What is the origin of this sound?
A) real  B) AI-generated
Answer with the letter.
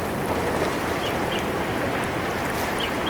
A